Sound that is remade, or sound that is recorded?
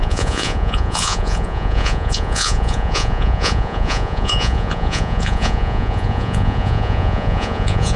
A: remade